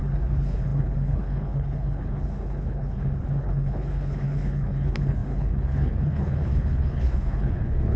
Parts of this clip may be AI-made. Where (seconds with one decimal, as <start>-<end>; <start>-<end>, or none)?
0.0-8.0